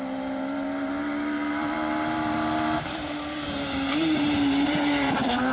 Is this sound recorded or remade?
remade